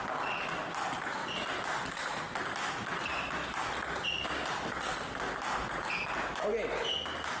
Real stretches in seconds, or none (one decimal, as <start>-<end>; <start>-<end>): 0.0-7.4